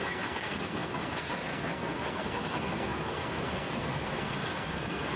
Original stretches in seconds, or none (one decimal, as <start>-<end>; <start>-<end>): none